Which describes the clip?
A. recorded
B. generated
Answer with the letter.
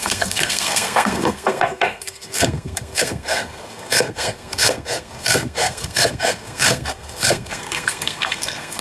B